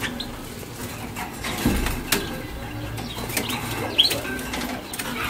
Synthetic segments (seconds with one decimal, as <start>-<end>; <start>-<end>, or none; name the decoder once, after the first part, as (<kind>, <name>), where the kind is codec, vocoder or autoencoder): none